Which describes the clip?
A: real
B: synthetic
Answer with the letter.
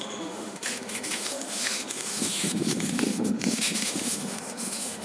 B